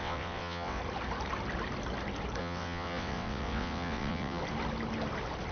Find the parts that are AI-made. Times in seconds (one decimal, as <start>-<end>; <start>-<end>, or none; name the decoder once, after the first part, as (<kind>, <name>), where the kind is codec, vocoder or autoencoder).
0.0-0.8 (vocoder, WaveNeXt); 2.4-4.4